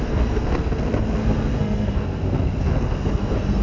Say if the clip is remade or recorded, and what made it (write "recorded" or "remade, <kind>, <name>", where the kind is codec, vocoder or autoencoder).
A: remade, codec, SNAC